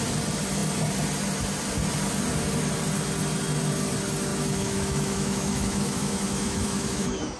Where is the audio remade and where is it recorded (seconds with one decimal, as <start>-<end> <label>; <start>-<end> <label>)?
0.0-4.3 recorded; 4.3-7.4 remade